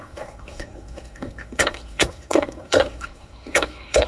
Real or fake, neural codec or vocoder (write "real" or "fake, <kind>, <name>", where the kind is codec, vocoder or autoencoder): fake, codec, SNAC